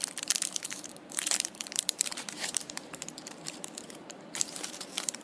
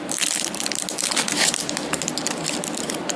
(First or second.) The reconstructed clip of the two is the first